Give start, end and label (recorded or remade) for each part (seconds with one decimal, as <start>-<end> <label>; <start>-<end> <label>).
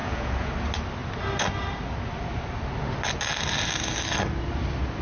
0.0-0.5 remade; 0.5-5.0 recorded